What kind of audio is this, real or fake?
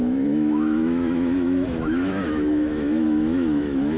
fake